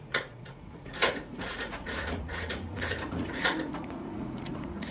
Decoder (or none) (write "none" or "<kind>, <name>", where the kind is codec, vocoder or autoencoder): vocoder, Vocos